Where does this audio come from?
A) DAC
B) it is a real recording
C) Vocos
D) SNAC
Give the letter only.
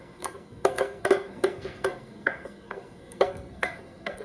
D